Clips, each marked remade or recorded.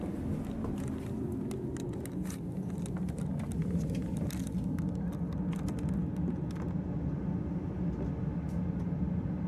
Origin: recorded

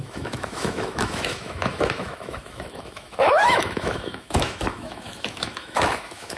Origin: remade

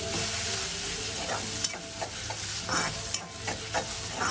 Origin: recorded